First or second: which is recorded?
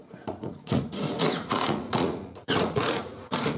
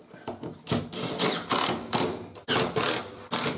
second